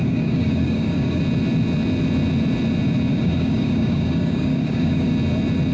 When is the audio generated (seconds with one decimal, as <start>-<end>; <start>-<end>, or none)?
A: 0.0-1.2; 3.1-5.1